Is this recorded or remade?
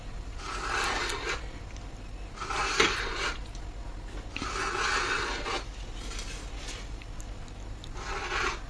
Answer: recorded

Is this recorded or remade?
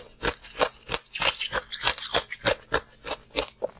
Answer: recorded